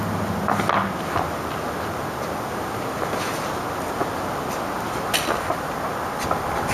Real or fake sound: real